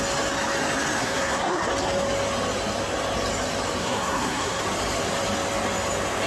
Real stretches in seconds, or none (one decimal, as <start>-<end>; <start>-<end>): 0.0-1.0; 1.7-3.8; 4.6-6.3